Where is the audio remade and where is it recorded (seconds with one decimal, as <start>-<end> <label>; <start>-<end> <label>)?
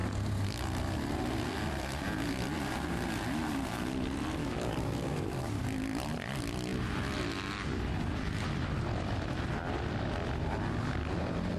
0.0-4.4 recorded; 4.4-5.5 remade; 5.5-11.6 recorded